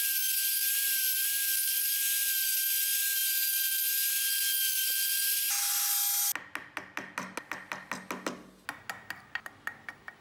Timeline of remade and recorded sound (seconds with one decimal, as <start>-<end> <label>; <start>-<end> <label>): 0.0-10.2 recorded